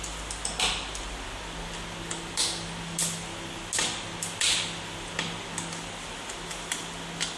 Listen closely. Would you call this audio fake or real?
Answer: real